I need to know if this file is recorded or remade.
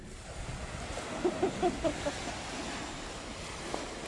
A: recorded